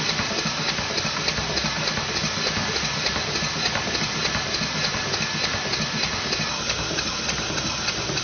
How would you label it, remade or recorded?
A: recorded